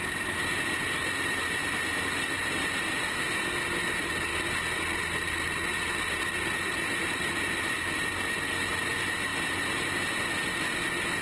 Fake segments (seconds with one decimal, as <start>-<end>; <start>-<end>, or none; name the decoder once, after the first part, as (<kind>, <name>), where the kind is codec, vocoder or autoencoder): none